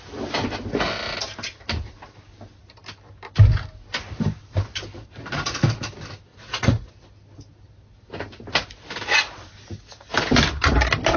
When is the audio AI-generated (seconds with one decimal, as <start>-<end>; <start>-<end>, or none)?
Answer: 6.3-6.9